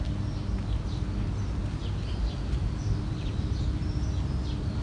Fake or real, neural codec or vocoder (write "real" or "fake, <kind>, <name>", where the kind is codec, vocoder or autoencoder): real